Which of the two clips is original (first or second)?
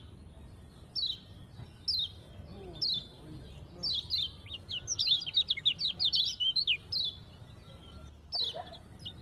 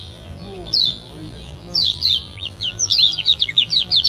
first